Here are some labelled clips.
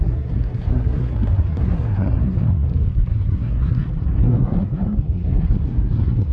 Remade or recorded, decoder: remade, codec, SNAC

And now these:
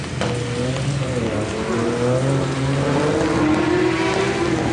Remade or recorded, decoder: recorded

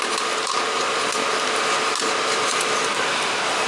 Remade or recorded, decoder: recorded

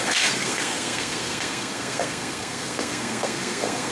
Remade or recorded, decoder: remade, codec, SNAC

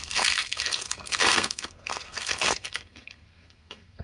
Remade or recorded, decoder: remade, codec, SNAC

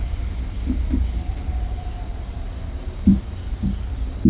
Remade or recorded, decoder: recorded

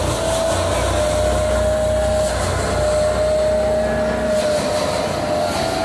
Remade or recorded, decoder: recorded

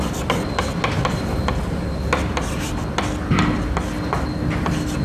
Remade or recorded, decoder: recorded